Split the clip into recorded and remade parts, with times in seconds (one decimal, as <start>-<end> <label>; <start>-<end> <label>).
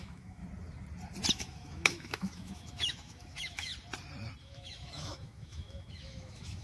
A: 0.0-0.4 remade; 0.4-1.3 recorded; 1.3-3.7 remade; 3.7-4.4 recorded; 4.4-6.6 remade